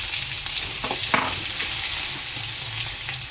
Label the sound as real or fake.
real